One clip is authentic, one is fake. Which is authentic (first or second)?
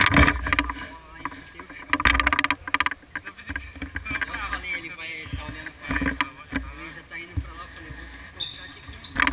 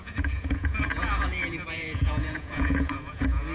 first